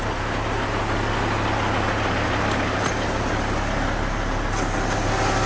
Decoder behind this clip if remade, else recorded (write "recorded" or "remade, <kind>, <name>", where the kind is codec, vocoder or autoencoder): recorded